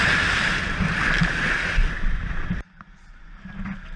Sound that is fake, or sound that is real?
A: real